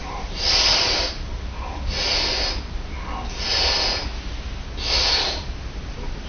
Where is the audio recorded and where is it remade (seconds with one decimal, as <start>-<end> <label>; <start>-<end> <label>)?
0.0-0.7 recorded; 0.7-1.3 remade; 1.3-5.1 recorded; 5.1-6.3 remade